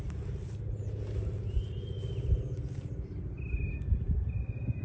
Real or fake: real